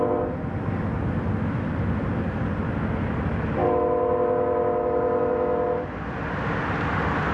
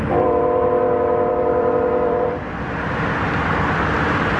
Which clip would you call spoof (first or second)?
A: second